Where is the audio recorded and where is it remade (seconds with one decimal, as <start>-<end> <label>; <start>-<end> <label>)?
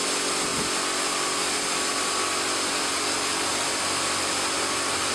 0.0-5.1 recorded